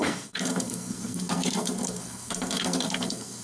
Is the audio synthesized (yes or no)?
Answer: yes